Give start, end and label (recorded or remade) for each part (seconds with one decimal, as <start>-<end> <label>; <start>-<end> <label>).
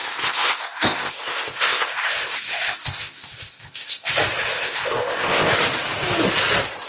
0.0-4.1 remade; 4.1-4.5 recorded; 4.5-5.5 remade; 5.5-6.9 recorded